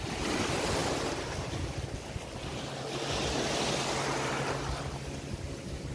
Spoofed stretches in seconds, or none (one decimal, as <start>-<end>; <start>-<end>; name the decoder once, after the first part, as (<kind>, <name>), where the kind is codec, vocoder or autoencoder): none